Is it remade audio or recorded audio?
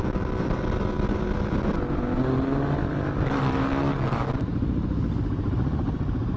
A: recorded